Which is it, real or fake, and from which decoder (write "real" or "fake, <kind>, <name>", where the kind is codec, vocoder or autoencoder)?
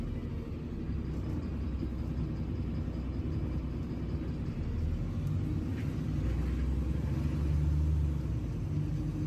real